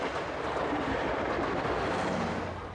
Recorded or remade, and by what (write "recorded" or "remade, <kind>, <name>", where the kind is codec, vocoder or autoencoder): recorded